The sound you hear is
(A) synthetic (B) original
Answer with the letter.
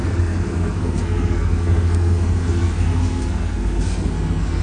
A